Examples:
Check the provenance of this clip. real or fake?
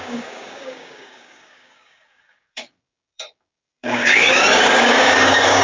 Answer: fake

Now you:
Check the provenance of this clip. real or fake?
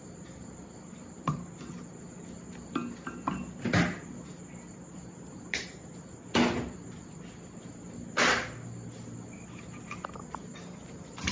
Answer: real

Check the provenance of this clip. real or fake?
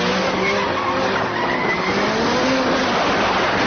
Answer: real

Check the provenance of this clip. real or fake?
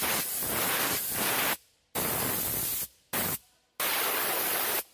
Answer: real